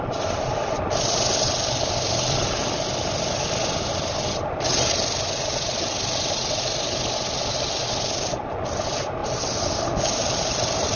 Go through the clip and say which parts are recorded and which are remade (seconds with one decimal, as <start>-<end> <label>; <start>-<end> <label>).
0.0-11.0 recorded